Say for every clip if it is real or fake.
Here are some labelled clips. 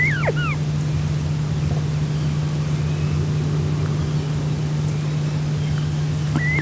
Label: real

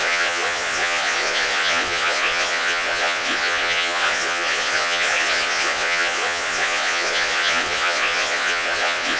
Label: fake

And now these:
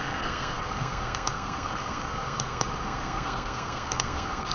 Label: fake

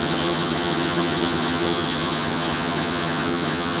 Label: fake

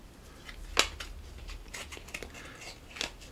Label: real